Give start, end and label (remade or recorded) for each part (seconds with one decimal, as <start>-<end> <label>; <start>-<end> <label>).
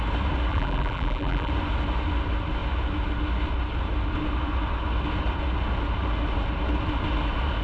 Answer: 0.0-0.5 recorded; 0.5-1.5 remade; 1.5-7.6 recorded